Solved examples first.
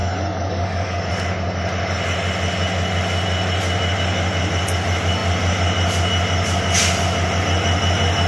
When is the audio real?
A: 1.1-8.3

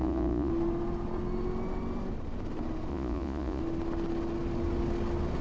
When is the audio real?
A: 0.5-2.9; 3.6-5.4